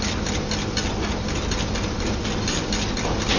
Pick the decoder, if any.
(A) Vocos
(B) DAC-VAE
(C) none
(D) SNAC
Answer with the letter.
C